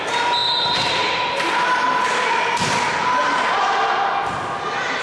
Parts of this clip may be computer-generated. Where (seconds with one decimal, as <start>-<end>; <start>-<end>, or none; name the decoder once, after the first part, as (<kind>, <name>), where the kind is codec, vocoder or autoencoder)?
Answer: none